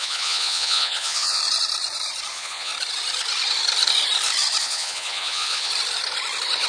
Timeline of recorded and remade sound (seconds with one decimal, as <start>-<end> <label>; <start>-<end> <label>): 0.0-1.4 remade; 1.4-2.3 recorded; 2.3-2.7 remade; 2.7-4.6 recorded; 4.6-5.7 remade; 5.7-6.7 recorded